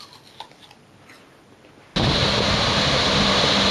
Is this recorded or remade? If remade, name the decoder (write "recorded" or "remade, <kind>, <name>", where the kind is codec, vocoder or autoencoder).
recorded